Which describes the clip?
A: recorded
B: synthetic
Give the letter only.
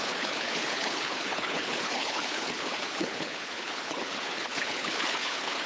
B